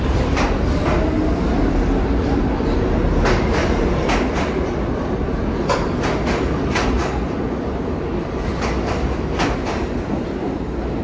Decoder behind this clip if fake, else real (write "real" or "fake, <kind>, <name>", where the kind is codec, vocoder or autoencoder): real